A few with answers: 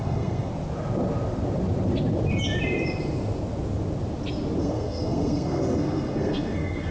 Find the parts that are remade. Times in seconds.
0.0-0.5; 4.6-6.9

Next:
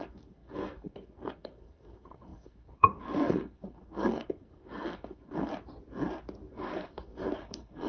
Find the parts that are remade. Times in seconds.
0.0-5.5; 6.5-7.9

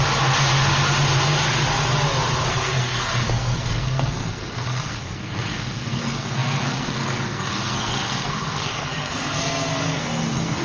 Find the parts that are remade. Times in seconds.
2.5-10.6

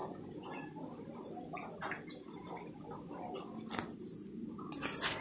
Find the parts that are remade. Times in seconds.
none